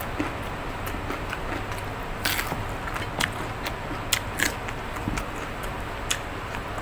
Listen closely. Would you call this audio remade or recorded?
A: recorded